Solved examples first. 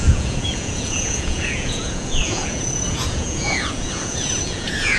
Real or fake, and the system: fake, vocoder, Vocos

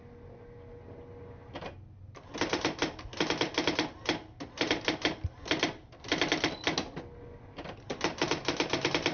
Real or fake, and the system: real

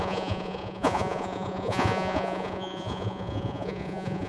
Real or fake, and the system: fake, vocoder, Vocos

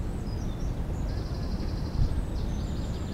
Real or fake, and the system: real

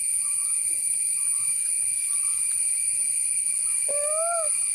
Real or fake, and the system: real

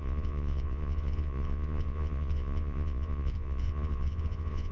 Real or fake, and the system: fake, vocoder, Vocos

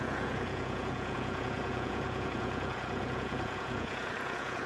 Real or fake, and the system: fake, vocoder, Vocos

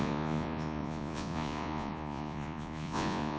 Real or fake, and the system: fake, vocoder, Vocos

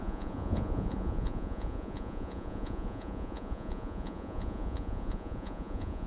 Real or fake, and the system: fake, vocoder, Vocos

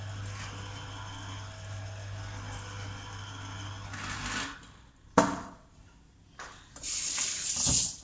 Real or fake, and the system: real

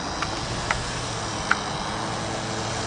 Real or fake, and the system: real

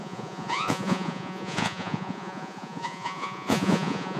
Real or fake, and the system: fake, vocoder, Vocos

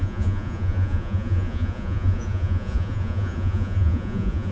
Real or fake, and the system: fake, vocoder, Vocos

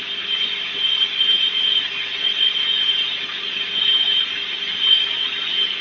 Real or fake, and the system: real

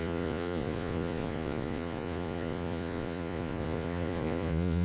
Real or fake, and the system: fake, vocoder, Vocos